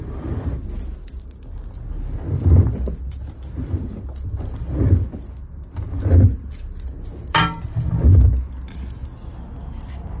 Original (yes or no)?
yes